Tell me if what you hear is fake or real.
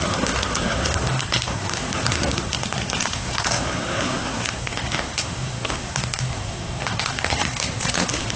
fake